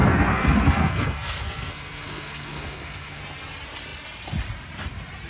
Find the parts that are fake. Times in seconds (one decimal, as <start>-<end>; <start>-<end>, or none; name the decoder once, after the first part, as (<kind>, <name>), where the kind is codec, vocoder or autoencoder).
0.0-3.2 (codec, SNAC)